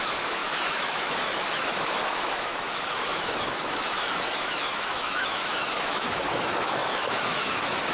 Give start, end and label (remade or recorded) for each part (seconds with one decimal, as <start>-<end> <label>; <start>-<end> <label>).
0.0-7.9 remade